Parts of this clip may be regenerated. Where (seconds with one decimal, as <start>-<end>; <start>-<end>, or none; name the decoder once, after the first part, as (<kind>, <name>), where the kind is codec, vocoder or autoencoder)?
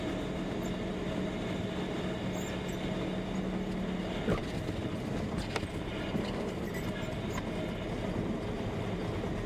none